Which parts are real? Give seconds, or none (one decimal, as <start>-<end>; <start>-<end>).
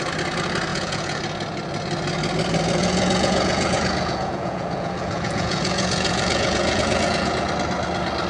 0.0-0.7; 1.2-2.8; 7.5-8.3